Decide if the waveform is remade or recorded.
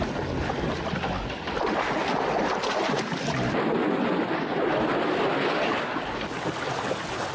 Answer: recorded